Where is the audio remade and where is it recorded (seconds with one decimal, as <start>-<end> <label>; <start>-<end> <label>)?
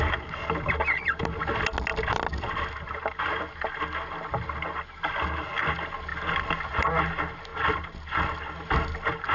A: 0.0-9.3 recorded